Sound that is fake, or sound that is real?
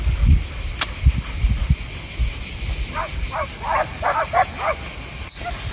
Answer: real